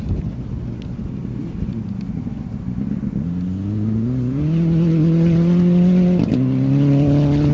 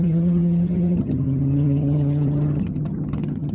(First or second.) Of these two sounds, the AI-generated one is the second